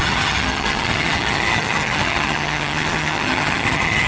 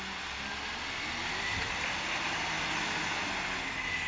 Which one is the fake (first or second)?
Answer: first